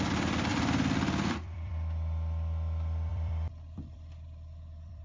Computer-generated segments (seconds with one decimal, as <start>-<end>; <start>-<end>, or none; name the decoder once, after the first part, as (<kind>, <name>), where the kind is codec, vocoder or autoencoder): 0.5-1.7 (vocoder, BigVGAN v2); 3.1-5.0